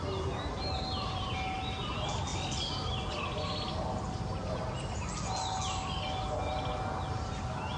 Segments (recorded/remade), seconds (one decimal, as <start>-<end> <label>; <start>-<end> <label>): 0.0-7.8 recorded